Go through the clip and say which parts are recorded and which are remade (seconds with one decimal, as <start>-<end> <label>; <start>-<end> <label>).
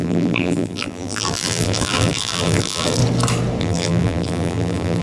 0.0-3.0 remade; 3.0-3.6 recorded; 3.6-5.0 remade